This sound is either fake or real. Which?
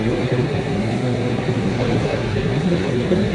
fake